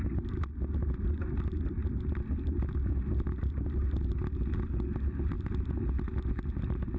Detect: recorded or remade recorded